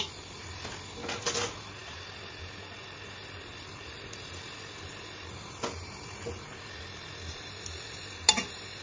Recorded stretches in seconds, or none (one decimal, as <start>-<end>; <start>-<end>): 0.0-8.8